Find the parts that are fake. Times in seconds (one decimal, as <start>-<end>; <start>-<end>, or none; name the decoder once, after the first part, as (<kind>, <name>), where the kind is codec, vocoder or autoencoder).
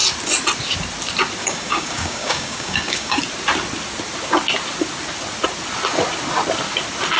1.4-3.2 (codec, DAC)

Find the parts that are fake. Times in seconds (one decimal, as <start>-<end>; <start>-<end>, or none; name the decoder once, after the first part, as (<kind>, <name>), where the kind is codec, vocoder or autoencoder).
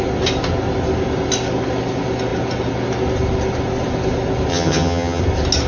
4.5-5.2 (vocoder, HiFi-GAN)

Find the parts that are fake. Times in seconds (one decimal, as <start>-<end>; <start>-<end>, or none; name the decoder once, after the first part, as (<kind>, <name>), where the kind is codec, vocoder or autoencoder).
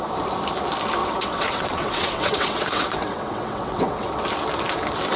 1.0-4.1 (vocoder, WaveNeXt)